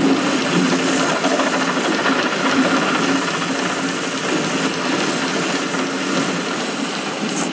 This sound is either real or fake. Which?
real